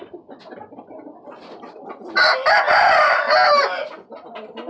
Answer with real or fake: real